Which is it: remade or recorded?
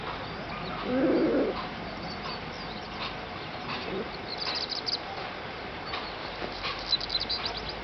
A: recorded